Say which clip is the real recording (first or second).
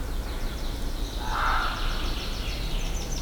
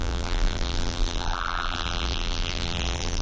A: first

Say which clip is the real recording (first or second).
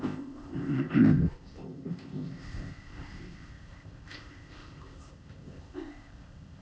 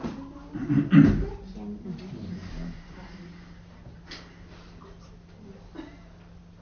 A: second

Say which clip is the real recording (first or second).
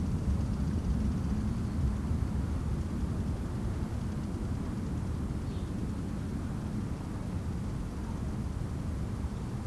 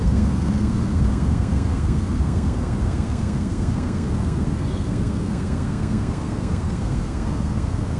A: first